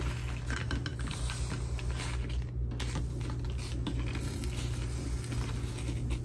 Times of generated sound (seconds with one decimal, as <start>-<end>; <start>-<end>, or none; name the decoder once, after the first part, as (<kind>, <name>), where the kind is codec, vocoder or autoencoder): none